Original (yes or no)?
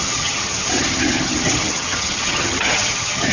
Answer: no